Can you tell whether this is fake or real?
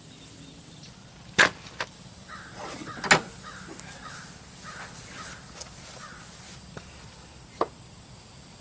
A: real